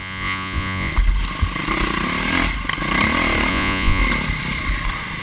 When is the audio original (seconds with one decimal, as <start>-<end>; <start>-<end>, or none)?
0.9-3.5; 4.0-5.2

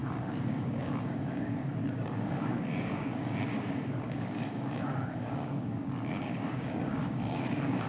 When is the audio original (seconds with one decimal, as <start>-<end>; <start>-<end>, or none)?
none

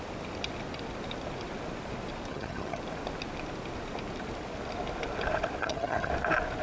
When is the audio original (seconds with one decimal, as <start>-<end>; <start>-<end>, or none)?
0.0-2.3; 2.8-5.6; 6.1-6.6

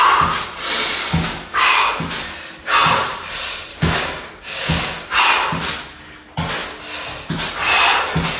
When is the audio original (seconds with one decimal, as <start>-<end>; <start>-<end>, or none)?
0.0-1.0; 1.9-3.7; 5.2-8.4

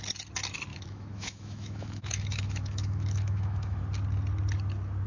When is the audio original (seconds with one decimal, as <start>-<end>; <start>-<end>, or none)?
0.0-0.7; 3.8-5.1